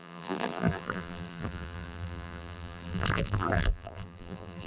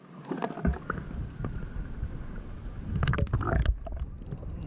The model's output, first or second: first